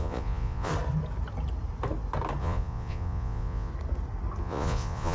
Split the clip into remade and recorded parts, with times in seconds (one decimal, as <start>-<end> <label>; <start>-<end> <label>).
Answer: 0.0-0.7 remade; 0.7-2.4 recorded; 2.4-3.7 remade; 3.7-4.4 recorded; 4.4-5.1 remade